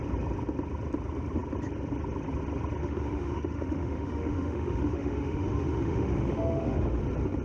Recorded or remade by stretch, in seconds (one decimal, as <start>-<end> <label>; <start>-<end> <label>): 0.0-2.8 recorded; 2.8-7.0 remade; 7.0-7.4 recorded